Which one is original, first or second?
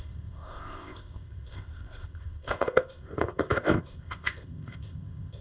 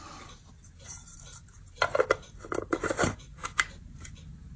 second